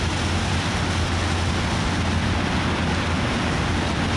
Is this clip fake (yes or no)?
no